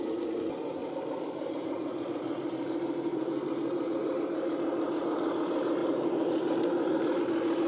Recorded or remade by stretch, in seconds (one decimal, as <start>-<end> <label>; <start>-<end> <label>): 0.0-0.8 recorded; 0.8-4.2 remade; 4.2-5.8 recorded; 5.8-7.2 remade; 7.2-7.7 recorded